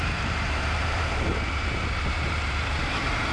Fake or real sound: fake